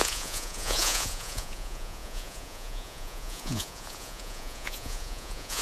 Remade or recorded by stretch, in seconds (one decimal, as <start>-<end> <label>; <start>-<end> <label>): 0.0-5.6 remade